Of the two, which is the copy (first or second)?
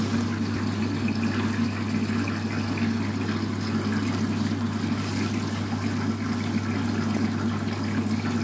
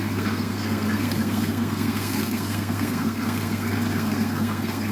second